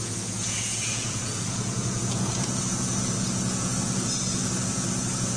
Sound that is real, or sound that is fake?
fake